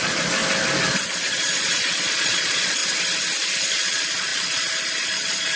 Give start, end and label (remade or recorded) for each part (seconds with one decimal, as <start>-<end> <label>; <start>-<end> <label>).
0.0-0.4 remade; 0.4-1.0 recorded; 1.0-2.8 remade; 2.8-3.6 recorded; 3.6-5.6 remade